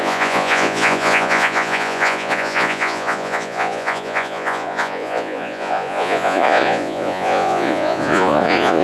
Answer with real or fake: fake